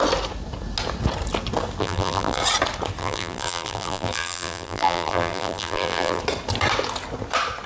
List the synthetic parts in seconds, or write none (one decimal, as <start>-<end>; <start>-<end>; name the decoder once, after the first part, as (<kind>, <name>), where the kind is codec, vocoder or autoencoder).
1.8-2.4 (vocoder, BigVGAN v2); 3.0-6.2